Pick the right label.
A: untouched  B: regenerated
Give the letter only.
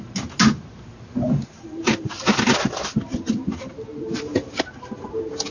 A